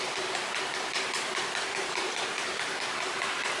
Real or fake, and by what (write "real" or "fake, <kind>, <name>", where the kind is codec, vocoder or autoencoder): fake, vocoder, BigVGAN v2